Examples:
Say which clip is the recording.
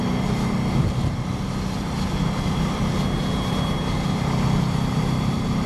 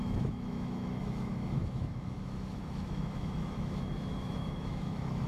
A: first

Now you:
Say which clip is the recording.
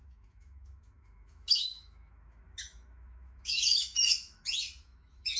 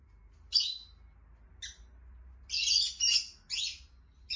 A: second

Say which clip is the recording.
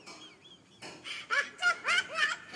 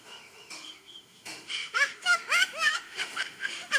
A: first